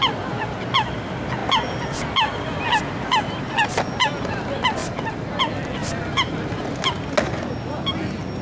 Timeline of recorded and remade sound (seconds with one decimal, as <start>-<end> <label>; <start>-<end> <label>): 0.0-4.8 recorded; 4.8-5.3 remade; 5.3-5.8 recorded; 5.8-6.7 remade; 6.7-8.4 recorded